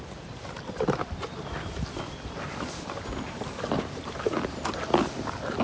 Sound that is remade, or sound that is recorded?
recorded